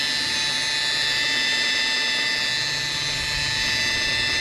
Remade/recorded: recorded